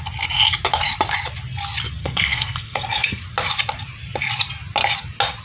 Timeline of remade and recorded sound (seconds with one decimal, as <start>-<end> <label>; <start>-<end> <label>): 0.0-2.0 recorded; 2.0-3.2 remade; 3.2-5.4 recorded